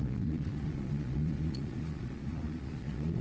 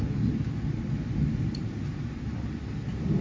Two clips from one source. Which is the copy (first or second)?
first